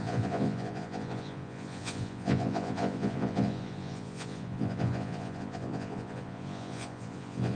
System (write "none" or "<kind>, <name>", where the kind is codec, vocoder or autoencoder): vocoder, Vocos